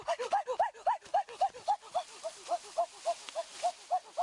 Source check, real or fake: real